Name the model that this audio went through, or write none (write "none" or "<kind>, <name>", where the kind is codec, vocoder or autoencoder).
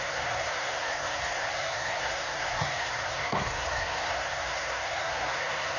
codec, SNAC